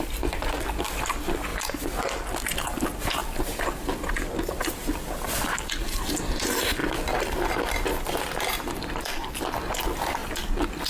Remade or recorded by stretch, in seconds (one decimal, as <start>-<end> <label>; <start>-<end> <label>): 0.0-1.5 recorded; 1.5-2.0 remade; 2.0-10.9 recorded